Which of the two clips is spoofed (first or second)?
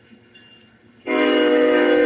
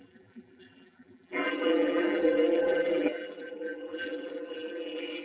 second